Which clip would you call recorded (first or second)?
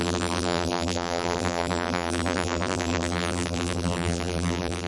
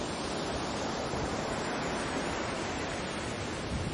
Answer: second